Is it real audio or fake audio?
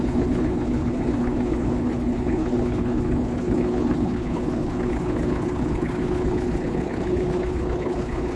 fake